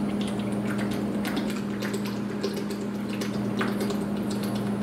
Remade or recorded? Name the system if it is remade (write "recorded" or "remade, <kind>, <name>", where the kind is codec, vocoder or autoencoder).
recorded